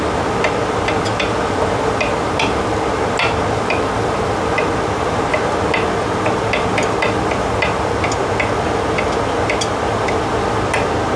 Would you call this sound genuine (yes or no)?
yes